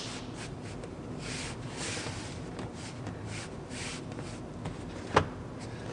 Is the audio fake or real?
real